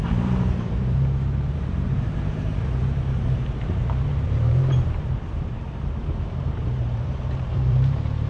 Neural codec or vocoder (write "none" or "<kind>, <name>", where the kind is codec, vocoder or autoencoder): vocoder, BigVGAN v2